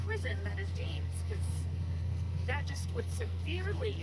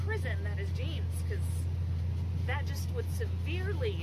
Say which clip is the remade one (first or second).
first